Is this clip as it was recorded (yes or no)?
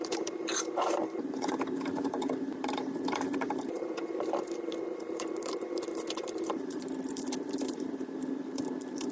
no